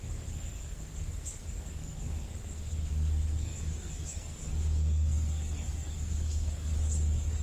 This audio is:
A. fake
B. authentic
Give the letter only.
A